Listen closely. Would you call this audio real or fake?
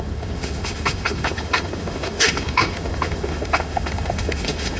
fake